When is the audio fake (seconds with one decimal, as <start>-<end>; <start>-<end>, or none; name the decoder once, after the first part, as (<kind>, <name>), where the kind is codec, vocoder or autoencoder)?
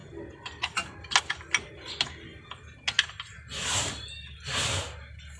none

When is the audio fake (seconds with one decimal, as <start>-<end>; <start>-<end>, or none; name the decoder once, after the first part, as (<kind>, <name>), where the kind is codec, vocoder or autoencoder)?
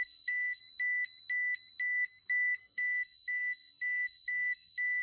0.0-0.6 (codec, SNAC); 2.6-5.0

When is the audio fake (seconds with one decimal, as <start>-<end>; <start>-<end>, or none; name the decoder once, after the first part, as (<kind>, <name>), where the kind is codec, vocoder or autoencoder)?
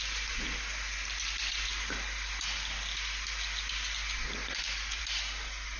none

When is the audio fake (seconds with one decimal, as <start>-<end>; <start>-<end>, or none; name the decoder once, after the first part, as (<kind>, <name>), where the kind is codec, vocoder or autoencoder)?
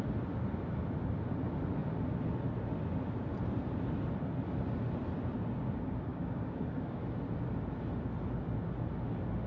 6.1-7.0 (codec, DAC)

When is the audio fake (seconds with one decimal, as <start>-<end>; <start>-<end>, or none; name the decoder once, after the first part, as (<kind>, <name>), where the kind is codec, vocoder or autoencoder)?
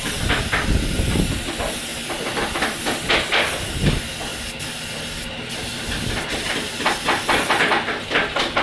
none